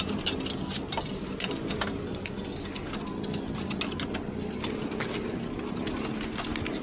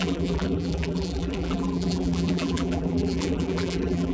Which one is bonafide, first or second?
first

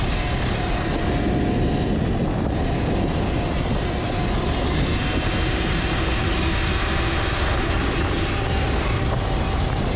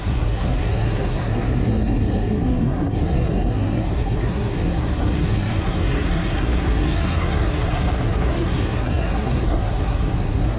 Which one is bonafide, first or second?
first